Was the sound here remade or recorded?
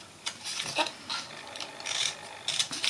recorded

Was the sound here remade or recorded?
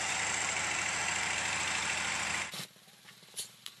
remade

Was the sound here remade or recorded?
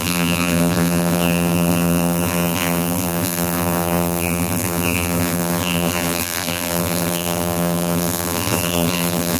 remade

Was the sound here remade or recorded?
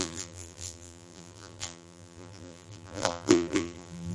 remade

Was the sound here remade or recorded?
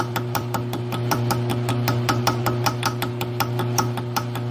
remade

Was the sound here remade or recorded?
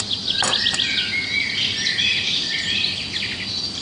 recorded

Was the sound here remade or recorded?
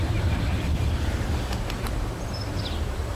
remade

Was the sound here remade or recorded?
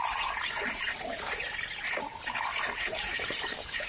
remade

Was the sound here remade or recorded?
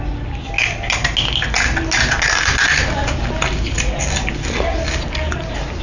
recorded